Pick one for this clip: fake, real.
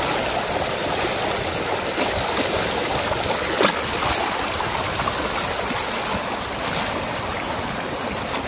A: real